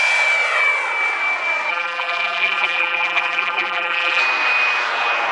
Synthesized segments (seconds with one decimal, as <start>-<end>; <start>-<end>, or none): 1.7-4.2